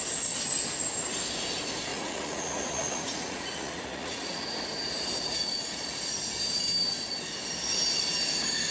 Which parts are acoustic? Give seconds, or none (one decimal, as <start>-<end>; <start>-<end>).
0.0-1.9; 4.4-8.7